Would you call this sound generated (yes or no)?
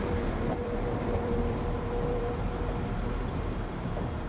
yes